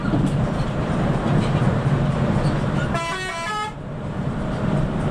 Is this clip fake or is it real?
fake